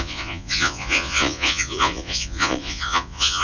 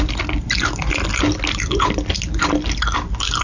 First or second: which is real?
second